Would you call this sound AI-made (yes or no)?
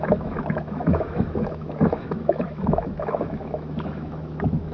yes